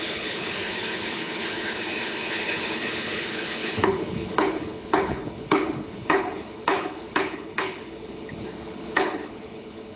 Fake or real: fake